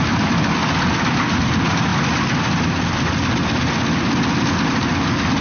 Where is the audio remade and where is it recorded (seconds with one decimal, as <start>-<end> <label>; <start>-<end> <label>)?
0.0-5.4 recorded